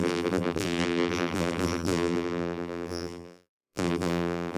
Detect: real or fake fake